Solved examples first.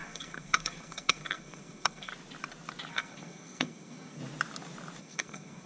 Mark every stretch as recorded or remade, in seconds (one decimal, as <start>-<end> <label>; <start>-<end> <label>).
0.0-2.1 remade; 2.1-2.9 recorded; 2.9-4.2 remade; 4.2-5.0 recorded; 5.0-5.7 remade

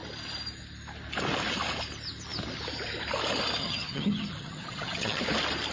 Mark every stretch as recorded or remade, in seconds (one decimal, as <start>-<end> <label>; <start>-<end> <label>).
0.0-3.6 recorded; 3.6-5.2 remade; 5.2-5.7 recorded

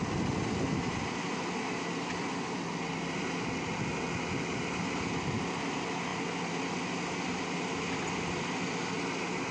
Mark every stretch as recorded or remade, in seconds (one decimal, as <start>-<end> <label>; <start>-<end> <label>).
0.0-9.5 recorded